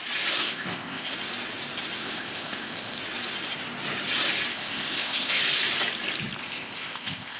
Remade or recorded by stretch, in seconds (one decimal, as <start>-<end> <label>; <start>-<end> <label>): 0.0-0.4 recorded; 0.4-1.1 remade; 1.1-2.0 recorded; 2.0-3.0 remade; 3.0-4.5 recorded; 4.5-5.4 remade; 5.4-6.4 recorded; 6.4-7.4 remade